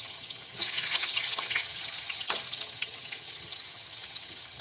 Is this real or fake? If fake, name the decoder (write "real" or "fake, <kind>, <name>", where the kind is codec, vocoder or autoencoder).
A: fake, vocoder, HiFi-GAN